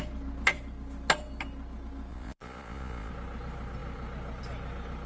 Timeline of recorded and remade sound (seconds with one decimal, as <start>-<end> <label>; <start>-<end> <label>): 0.0-2.1 recorded; 2.1-3.1 remade; 3.1-5.1 recorded